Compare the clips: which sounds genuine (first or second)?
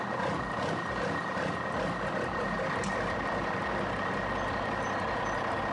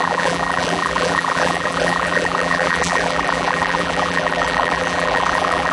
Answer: first